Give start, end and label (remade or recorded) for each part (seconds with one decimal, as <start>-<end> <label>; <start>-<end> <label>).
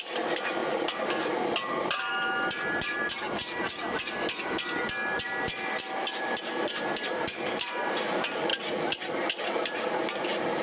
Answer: 0.0-8.5 remade; 8.5-9.4 recorded; 9.4-10.6 remade